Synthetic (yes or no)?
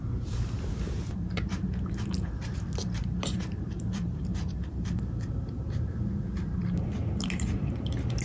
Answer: yes